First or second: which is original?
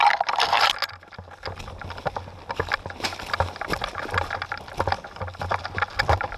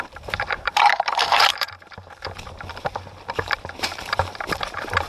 first